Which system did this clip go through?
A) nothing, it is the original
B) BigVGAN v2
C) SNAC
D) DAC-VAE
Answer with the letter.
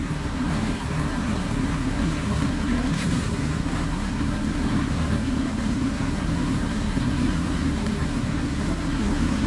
C